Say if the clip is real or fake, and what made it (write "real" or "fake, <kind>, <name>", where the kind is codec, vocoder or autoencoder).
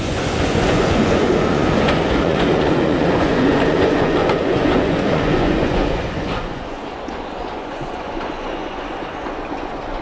fake, vocoder, Vocos